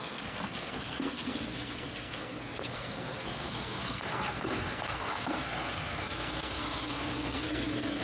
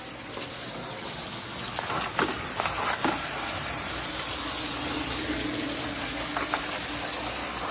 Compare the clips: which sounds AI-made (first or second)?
first